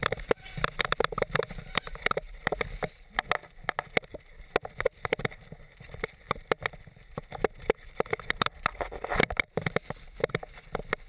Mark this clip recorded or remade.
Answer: recorded